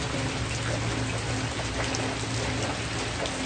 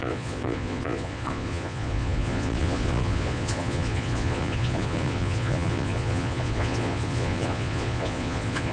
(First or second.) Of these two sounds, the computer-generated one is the second